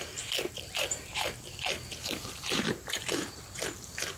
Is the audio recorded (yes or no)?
no